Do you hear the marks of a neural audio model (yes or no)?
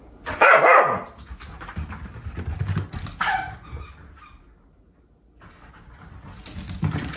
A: no